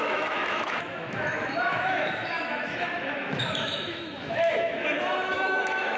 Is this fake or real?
fake